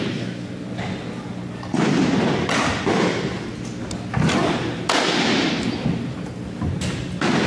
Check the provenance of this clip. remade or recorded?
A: recorded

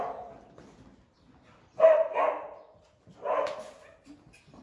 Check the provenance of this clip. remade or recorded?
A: recorded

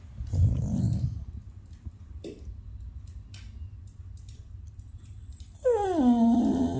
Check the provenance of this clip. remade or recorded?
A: recorded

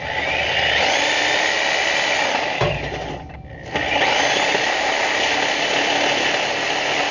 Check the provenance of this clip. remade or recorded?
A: recorded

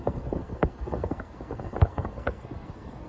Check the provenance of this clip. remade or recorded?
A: remade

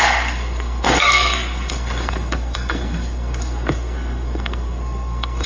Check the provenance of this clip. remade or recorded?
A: remade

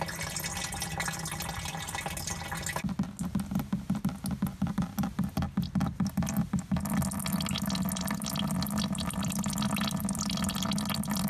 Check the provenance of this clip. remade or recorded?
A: recorded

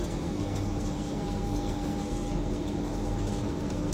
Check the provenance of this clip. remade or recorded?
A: remade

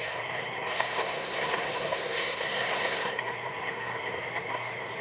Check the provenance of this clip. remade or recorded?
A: remade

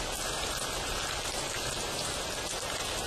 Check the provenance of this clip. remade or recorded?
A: recorded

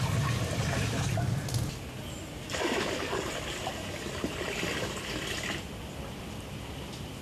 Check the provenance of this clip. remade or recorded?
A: recorded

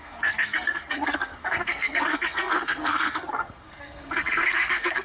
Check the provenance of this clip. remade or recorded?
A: remade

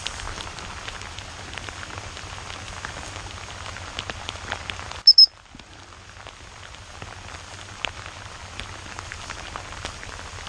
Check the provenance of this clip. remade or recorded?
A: recorded